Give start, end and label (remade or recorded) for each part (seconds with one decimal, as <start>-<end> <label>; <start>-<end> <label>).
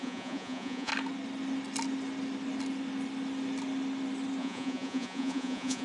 0.0-0.9 remade; 0.9-4.4 recorded; 4.4-5.8 remade